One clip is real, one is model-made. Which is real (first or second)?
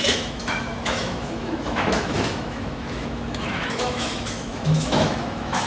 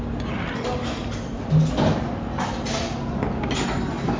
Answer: second